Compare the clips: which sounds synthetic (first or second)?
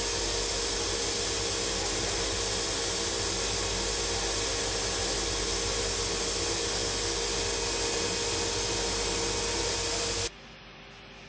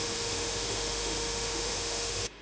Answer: second